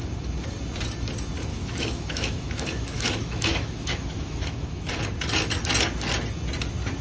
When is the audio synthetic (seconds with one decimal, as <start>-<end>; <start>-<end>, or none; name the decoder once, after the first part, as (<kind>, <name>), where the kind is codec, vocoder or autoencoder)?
1.5-4.9 (autoencoder, DAC-VAE)